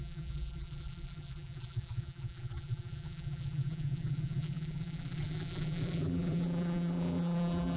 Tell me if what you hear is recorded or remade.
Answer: remade